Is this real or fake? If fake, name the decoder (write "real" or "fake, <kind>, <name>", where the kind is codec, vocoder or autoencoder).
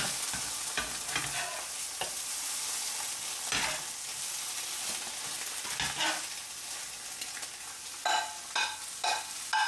real